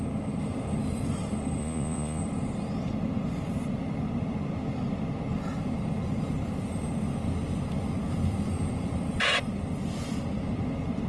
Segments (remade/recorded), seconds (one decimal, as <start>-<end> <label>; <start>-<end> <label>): 0.0-1.6 recorded; 1.6-2.2 remade; 2.2-11.1 recorded